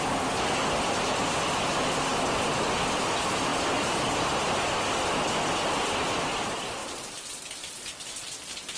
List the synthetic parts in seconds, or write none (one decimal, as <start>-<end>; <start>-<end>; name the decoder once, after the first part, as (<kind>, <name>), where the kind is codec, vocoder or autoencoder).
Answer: none